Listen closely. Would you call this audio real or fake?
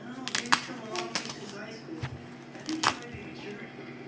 real